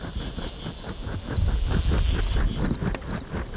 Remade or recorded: recorded